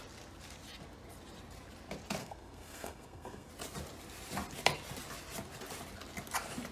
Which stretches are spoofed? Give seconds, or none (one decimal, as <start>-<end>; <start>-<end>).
2.2-3.5

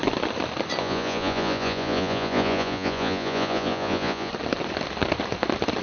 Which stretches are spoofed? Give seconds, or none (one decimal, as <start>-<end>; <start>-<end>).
0.8-4.3

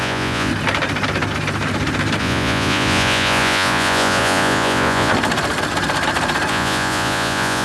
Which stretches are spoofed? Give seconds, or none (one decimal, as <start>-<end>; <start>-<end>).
0.0-0.5; 2.2-5.1; 6.5-7.6

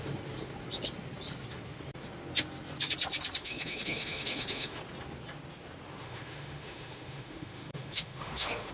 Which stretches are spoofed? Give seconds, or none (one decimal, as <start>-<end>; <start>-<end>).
3.4-4.8; 6.0-8.7

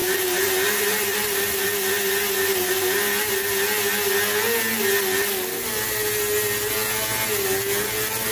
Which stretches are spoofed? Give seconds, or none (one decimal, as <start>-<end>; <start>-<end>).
0.0-3.3

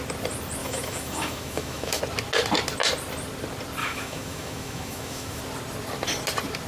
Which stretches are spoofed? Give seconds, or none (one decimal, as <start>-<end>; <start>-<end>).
0.6-2.0; 3.8-5.4

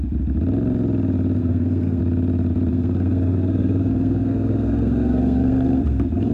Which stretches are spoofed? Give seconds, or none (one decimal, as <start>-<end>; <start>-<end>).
1.4-2.0; 2.7-6.3

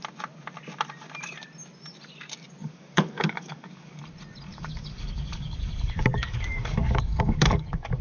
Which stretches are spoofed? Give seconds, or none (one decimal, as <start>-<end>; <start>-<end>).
2.6-4.0; 4.5-8.0